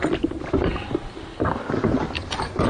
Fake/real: fake